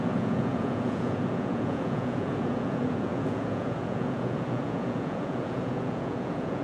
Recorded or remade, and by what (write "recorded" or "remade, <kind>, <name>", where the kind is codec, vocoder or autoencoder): remade, vocoder, Vocos